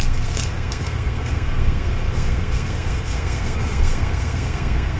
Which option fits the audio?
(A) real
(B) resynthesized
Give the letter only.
B